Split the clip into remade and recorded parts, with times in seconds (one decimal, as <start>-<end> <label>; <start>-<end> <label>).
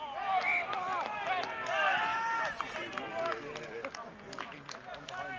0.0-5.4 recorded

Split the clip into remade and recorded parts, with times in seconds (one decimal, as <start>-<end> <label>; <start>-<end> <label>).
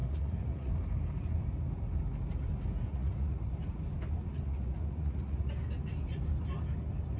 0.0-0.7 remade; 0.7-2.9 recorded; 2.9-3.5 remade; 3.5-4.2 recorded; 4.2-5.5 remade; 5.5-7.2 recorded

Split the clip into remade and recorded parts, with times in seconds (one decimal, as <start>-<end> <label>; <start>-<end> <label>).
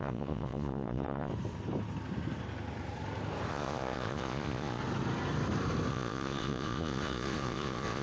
0.0-1.3 remade; 1.3-3.5 recorded; 3.5-4.8 remade; 4.8-5.9 recorded; 5.9-8.0 remade